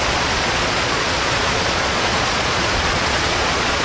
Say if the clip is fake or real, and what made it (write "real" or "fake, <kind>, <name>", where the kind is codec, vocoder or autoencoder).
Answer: fake, vocoder, Vocos